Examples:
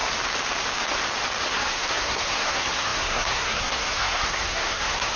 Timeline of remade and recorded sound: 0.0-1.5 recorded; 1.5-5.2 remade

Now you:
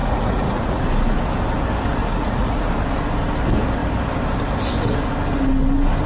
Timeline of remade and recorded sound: 0.0-0.8 remade; 0.8-2.0 recorded; 2.0-2.7 remade; 2.7-6.1 recorded